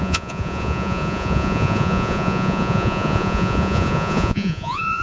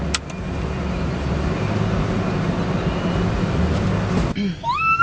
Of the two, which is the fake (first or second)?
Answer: first